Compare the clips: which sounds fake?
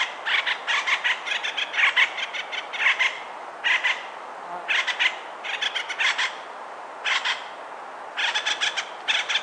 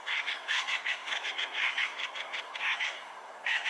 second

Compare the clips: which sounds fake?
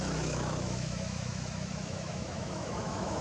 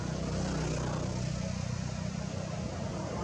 first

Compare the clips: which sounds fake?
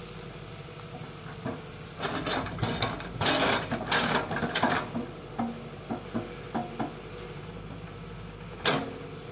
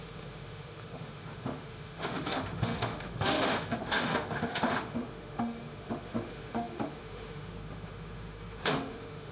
second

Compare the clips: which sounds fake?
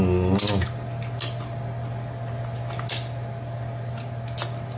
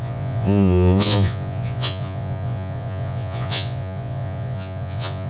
second